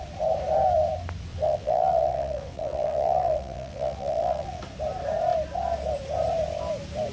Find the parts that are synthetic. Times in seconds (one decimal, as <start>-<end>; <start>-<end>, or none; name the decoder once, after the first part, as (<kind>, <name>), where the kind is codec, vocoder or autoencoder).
1.3-4.6 (vocoder, WaveNeXt)